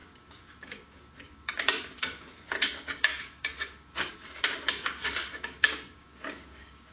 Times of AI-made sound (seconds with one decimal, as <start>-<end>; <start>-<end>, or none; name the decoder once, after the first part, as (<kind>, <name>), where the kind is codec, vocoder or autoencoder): 0.0-6.9 (codec, DAC)